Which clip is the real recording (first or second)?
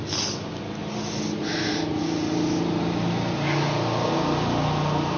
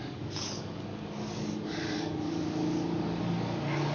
first